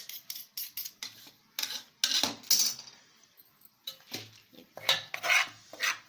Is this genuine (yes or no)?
yes